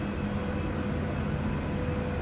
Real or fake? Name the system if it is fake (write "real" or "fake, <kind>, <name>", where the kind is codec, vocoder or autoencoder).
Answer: real